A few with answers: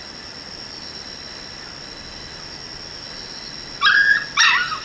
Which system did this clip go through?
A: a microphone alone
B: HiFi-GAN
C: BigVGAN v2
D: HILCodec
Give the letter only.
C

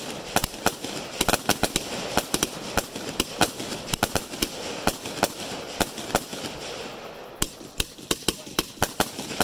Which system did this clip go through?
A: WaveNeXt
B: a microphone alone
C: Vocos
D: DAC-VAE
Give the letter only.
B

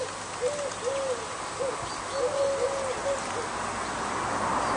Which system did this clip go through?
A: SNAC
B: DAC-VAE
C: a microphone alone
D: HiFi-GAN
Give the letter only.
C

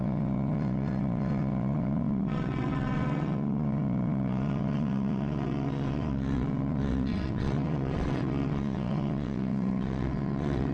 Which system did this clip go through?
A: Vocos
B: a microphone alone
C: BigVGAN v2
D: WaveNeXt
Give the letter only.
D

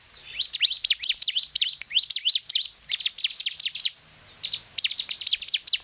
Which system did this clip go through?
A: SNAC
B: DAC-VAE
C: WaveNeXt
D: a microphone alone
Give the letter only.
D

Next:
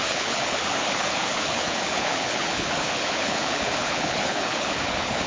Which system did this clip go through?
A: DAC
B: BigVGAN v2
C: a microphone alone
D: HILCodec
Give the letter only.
D